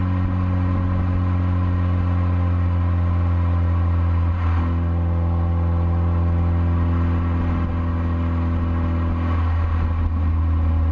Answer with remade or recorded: recorded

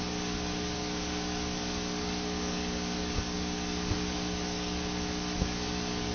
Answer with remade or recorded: remade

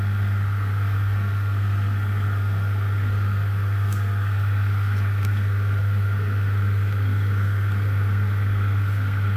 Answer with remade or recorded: remade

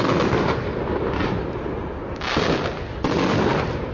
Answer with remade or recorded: recorded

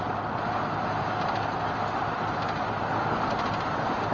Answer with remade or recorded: recorded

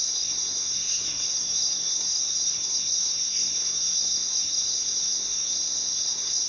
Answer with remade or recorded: remade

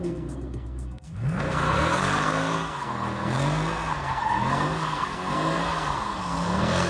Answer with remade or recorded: remade